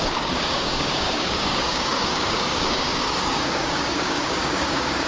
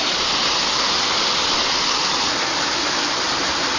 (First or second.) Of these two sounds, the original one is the second